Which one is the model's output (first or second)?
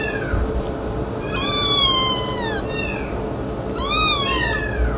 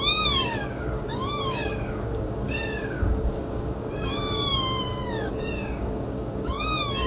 second